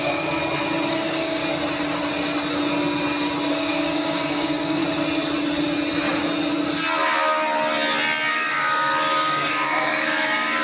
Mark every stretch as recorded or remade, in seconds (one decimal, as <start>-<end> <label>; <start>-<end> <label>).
0.0-0.4 remade; 0.4-0.9 recorded; 0.9-1.4 remade; 1.4-3.5 recorded; 3.5-4.8 remade; 4.8-8.3 recorded; 8.3-10.6 remade